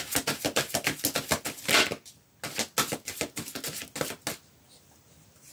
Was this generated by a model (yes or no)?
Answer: no